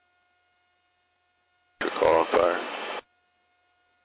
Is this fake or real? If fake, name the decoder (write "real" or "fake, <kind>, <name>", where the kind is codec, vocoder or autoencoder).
real